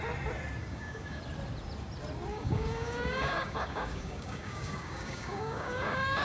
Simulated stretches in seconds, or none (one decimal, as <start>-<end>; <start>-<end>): 0.6-1.2; 2.3-6.2